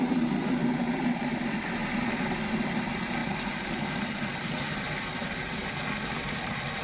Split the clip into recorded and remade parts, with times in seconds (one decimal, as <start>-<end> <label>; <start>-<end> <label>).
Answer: 0.0-0.6 remade; 0.6-1.2 recorded; 1.2-3.2 remade; 3.2-4.5 recorded; 4.5-6.8 remade